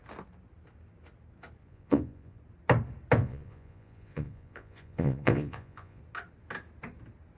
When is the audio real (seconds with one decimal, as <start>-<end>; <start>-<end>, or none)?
0.0-1.6; 2.4-3.2; 6.0-7.4